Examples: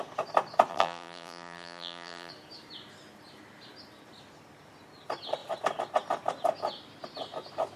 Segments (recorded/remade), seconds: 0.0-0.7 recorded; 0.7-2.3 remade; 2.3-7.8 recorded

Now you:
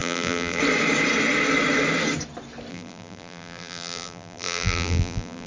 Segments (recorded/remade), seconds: 0.0-0.6 remade; 0.6-2.7 recorded; 2.7-5.5 remade

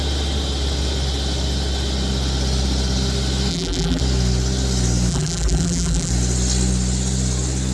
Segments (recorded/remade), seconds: 0.0-3.5 recorded; 3.5-4.0 remade; 4.0-5.1 recorded; 5.1-6.1 remade; 6.1-7.7 recorded

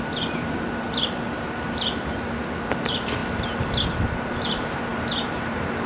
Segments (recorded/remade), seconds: 0.0-5.9 remade

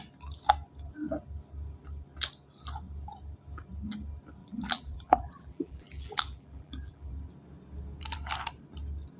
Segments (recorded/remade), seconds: 0.0-4.4 recorded; 4.4-7.1 remade; 7.1-9.2 recorded

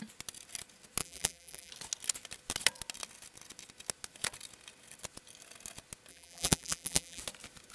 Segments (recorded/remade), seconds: 0.0-1.0 recorded; 1.0-1.7 remade; 1.7-6.1 recorded; 6.1-7.2 remade; 7.2-7.7 recorded

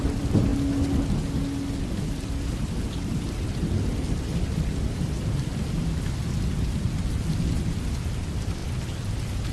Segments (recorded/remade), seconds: 0.0-0.5 remade; 0.5-2.1 recorded; 2.1-5.5 remade; 5.5-7.1 recorded; 7.1-8.6 remade; 8.6-9.5 recorded